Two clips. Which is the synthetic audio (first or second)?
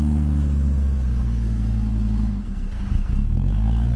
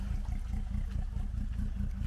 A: first